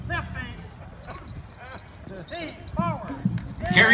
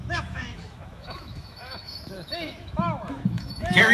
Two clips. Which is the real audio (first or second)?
first